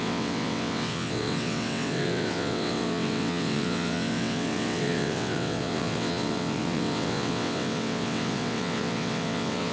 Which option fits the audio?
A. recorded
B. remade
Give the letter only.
B